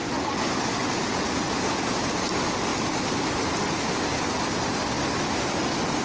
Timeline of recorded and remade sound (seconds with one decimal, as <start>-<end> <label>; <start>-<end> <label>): 0.0-0.8 recorded; 0.8-2.1 remade; 2.1-6.0 recorded